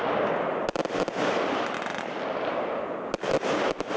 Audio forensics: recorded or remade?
recorded